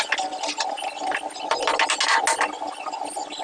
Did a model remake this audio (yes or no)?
no